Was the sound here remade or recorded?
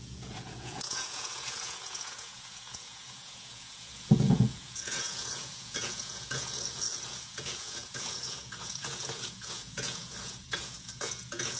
remade